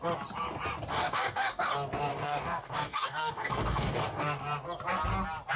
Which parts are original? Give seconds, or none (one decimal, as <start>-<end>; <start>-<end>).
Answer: 0.0-0.9; 1.7-2.1; 4.4-5.6